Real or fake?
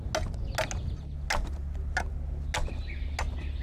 real